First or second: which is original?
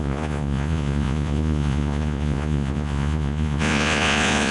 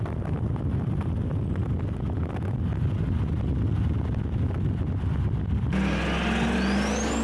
second